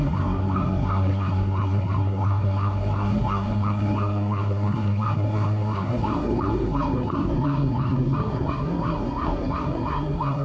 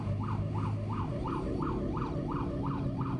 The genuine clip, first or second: second